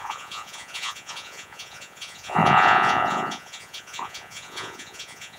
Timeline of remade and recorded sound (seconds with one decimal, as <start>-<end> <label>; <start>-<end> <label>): 0.0-5.4 remade